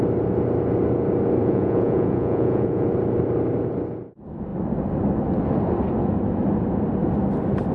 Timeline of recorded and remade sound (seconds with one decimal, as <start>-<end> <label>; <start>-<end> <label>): 0.0-1.4 recorded; 1.4-2.9 remade; 2.9-7.7 recorded